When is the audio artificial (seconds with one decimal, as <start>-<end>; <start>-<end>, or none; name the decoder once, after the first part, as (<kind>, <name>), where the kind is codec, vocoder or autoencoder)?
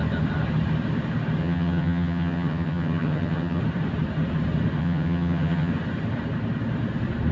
1.4-3.6 (vocoder, HiFi-GAN); 4.8-5.7